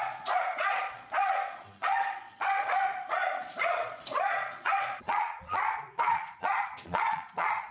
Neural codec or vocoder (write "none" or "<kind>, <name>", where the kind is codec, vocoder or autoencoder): vocoder, Vocos